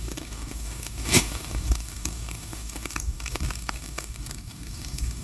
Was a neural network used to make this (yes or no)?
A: yes